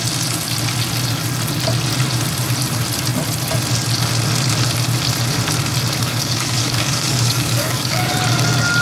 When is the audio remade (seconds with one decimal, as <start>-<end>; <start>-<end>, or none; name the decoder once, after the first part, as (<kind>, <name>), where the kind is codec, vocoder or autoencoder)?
6.0-8.1 (codec, DAC)